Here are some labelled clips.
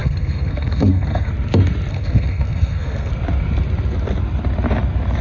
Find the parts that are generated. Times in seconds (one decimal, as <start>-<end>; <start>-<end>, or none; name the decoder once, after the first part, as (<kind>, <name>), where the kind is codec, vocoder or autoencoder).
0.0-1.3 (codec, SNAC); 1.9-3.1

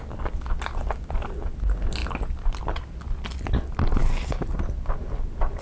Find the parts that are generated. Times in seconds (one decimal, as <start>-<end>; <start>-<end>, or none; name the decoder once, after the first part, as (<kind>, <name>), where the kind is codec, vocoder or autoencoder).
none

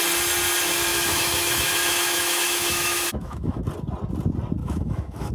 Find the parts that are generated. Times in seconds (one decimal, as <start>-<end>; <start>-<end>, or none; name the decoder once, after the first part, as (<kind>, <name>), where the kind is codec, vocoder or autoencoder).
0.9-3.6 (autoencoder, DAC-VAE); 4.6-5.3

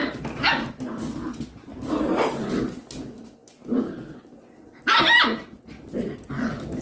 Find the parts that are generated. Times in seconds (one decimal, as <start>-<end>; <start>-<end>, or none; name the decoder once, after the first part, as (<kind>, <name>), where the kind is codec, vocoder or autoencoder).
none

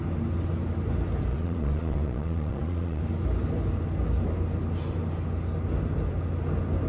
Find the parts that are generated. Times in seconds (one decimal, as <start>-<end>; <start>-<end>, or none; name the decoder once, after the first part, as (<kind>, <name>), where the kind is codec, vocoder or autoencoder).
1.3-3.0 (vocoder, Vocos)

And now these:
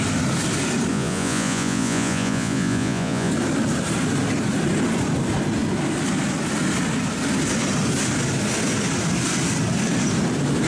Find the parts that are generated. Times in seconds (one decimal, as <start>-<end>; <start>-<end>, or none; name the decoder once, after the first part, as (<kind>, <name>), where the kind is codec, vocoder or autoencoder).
0.9-3.3 (vocoder, Vocos)